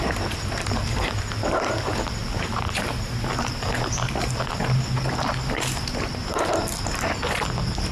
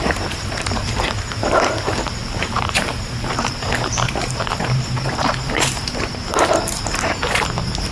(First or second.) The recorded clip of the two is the first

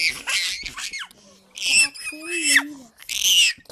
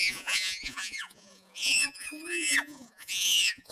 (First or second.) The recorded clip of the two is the first